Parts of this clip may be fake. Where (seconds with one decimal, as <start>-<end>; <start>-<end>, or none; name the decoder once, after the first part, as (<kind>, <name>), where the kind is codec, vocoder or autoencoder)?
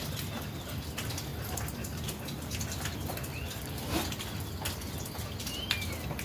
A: none